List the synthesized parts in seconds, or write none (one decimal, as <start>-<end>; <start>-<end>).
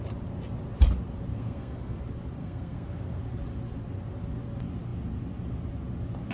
1.3-2.0; 2.4-3.2